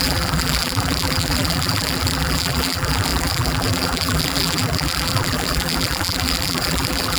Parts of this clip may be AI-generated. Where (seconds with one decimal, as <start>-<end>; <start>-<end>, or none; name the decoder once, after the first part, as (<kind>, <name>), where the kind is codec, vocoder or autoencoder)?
0.0-7.2 (vocoder, BigVGAN v2)